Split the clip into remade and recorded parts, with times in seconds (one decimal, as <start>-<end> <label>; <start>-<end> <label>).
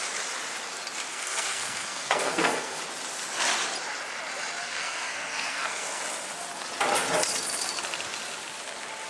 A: 0.0-1.1 recorded; 1.1-2.8 remade; 2.8-4.6 recorded; 4.6-6.0 remade; 6.0-9.1 recorded